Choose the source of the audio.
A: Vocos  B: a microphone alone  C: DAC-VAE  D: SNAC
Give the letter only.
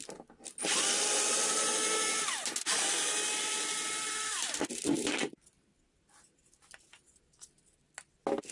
B